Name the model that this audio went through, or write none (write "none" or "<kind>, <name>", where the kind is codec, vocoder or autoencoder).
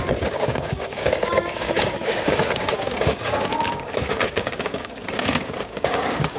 codec, DAC